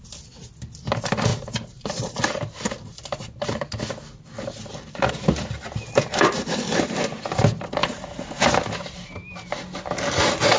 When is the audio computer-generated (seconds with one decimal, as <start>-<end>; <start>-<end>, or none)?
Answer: 1.3-3.7; 7.8-8.4